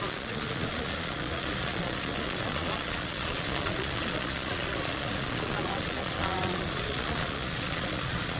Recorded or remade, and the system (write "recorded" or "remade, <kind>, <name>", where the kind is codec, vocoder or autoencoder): remade, vocoder, Vocos